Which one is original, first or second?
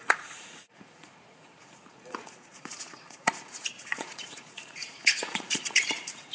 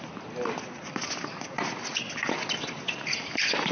second